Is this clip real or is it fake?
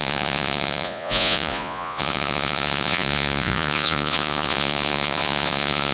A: fake